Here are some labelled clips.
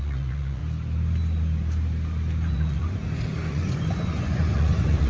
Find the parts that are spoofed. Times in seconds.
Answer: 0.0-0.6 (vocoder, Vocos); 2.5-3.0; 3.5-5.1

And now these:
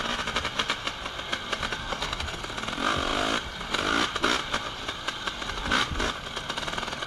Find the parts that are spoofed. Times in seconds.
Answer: 1.8-2.4 (codec, SNAC)